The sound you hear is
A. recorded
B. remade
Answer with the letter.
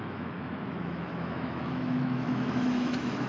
B